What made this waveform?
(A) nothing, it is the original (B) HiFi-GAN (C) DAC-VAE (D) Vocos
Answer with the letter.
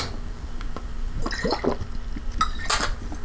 A